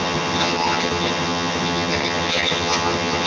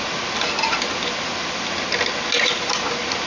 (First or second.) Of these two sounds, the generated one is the first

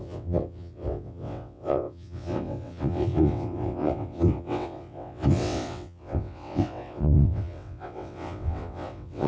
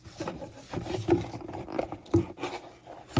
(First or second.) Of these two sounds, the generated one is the first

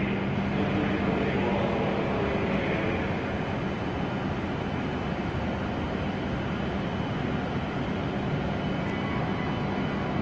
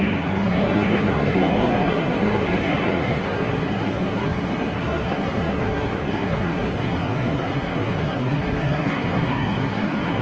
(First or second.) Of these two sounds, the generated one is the second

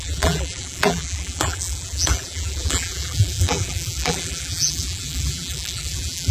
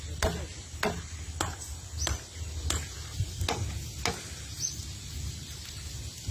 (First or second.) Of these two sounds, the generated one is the first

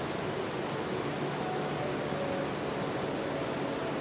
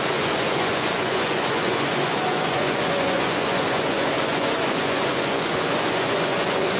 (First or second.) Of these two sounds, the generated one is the second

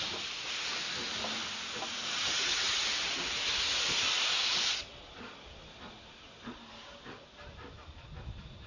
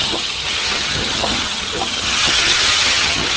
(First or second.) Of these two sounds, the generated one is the second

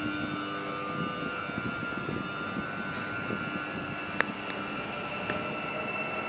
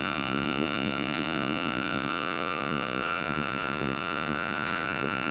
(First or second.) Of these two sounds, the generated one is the second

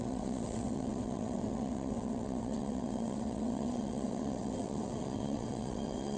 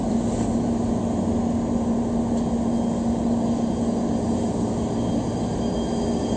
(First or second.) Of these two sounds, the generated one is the first